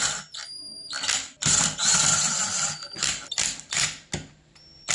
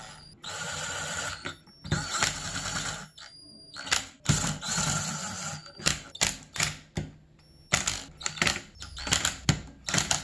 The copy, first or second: first